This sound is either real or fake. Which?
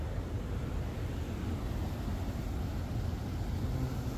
real